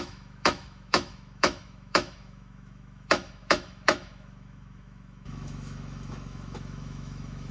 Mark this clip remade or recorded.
remade